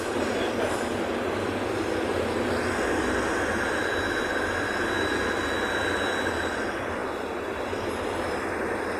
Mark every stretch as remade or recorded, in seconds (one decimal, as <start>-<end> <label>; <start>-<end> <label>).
0.0-7.0 remade; 7.0-8.0 recorded; 8.0-9.0 remade